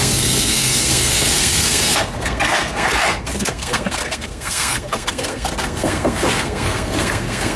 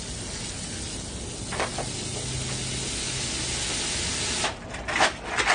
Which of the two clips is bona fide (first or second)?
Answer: second